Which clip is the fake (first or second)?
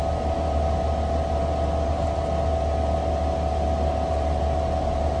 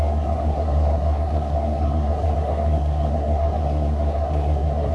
second